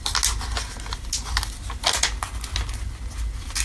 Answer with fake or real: real